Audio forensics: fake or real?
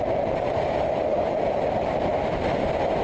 real